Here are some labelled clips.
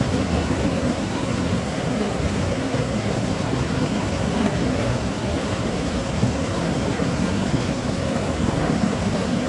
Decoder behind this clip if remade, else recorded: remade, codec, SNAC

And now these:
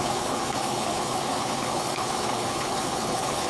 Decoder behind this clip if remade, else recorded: remade, codec, HILCodec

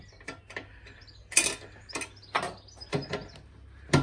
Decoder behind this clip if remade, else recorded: recorded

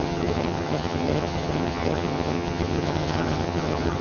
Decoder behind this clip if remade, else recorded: remade, vocoder, HiFi-GAN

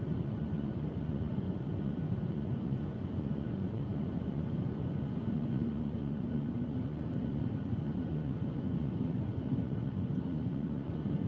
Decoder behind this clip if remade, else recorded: remade, vocoder, Vocos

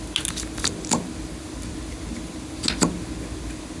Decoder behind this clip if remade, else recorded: recorded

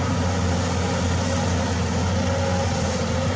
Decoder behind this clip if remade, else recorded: recorded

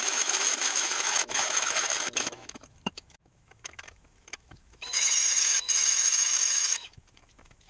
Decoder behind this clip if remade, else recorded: remade, autoencoder, DAC-VAE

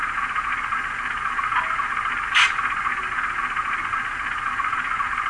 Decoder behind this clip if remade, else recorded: recorded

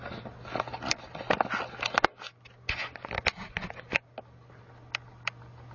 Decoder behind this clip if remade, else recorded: recorded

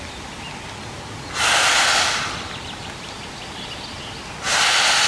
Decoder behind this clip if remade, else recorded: recorded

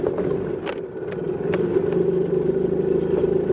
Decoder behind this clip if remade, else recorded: recorded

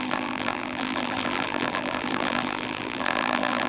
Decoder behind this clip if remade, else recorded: remade, vocoder, BigVGAN v2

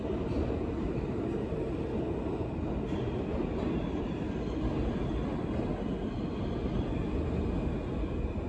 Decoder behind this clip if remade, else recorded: recorded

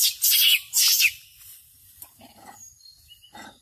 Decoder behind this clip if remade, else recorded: recorded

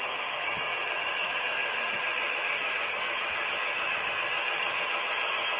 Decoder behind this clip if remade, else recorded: remade, autoencoder, DAC-VAE